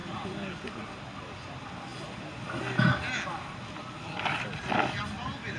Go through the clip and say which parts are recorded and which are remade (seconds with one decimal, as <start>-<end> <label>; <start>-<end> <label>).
0.0-5.6 recorded